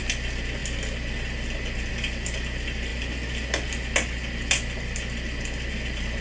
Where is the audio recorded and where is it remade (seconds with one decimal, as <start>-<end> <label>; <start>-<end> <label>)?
0.0-6.2 recorded